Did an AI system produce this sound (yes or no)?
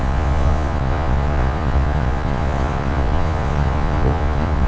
yes